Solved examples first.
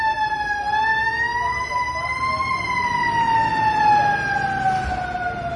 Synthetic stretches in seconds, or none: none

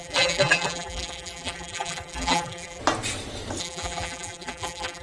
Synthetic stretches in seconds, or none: 0.0-2.8 (vocoder, BigVGAN v2); 3.6-5.0